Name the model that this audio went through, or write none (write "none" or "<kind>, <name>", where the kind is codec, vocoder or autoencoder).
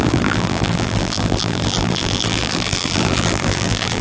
vocoder, BigVGAN v2